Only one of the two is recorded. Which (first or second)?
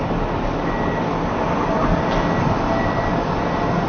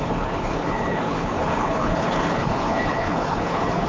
first